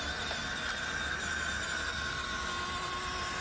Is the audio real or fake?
real